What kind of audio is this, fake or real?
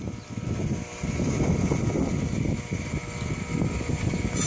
real